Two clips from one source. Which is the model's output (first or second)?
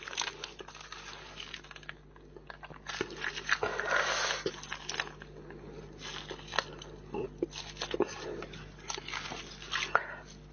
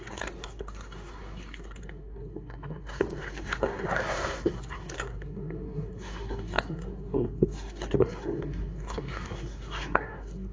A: second